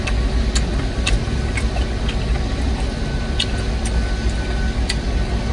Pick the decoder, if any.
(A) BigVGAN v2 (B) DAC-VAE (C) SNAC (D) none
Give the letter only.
D